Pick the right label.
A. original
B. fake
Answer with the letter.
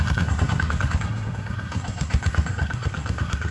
B